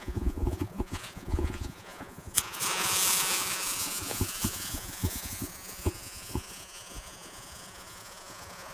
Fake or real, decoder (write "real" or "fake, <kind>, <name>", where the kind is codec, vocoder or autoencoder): fake, vocoder, Vocos